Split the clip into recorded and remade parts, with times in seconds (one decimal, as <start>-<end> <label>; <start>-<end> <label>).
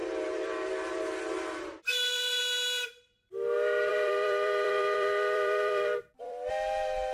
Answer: 0.0-2.4 remade; 2.4-3.9 recorded; 3.9-6.5 remade; 6.5-7.1 recorded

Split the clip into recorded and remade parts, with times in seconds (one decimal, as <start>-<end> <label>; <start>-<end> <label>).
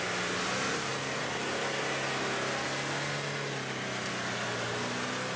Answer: 0.0-5.4 recorded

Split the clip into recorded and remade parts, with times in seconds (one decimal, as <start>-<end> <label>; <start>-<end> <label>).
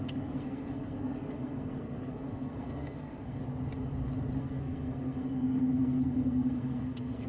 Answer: 0.0-3.4 remade; 3.4-4.4 recorded; 4.4-7.3 remade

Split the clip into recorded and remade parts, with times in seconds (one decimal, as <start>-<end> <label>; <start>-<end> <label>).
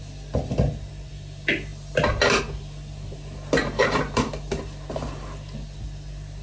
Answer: 0.0-6.4 recorded